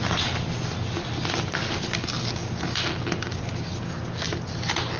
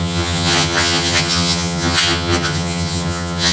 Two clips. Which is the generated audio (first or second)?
second